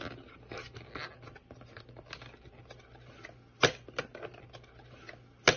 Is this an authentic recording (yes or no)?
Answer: yes